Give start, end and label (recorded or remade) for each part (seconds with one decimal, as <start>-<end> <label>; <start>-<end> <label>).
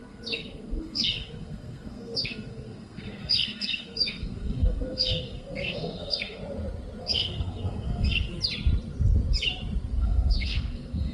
0.0-6.4 remade; 6.4-7.0 recorded; 7.0-8.3 remade; 8.3-10.0 recorded; 10.0-11.1 remade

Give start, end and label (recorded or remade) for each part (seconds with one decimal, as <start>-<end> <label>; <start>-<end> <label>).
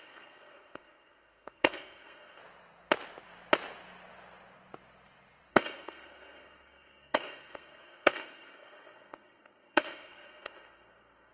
0.0-2.4 remade; 2.4-5.5 recorded; 5.5-11.3 remade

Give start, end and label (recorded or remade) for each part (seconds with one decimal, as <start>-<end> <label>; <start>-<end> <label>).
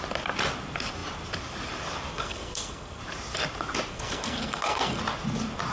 0.0-2.1 recorded; 2.1-3.0 remade; 3.0-3.9 recorded; 3.9-5.0 remade; 5.0-5.7 recorded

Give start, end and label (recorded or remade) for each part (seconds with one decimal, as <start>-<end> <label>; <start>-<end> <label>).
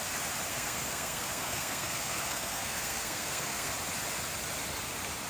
0.0-0.5 recorded; 0.5-3.7 remade; 3.7-5.3 recorded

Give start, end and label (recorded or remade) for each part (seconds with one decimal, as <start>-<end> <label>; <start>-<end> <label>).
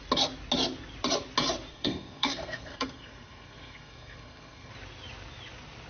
0.0-1.7 recorded; 1.7-4.7 remade; 4.7-5.9 recorded